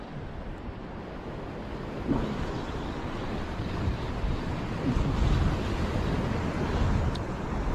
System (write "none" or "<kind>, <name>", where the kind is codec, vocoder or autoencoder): none